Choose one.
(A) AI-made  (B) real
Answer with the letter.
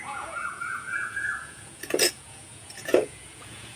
A